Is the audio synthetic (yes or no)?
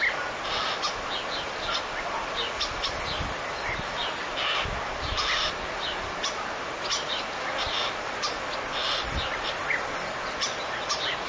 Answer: no